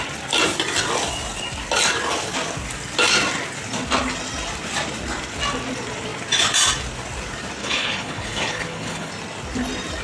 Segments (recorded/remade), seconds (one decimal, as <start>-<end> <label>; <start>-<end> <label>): 0.0-7.6 recorded; 7.6-9.1 remade; 9.1-10.0 recorded